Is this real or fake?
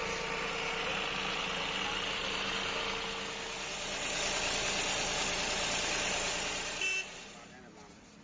real